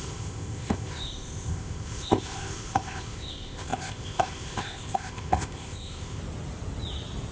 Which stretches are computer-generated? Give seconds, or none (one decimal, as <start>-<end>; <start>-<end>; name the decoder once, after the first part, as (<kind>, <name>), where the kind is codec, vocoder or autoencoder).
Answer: 0.0-6.2 (codec, ZipCodec)